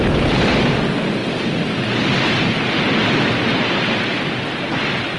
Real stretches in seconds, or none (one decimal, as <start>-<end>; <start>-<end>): 0.0-5.2